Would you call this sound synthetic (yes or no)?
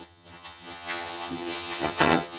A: yes